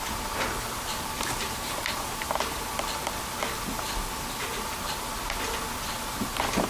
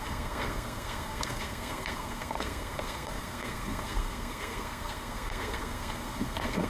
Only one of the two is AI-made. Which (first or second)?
second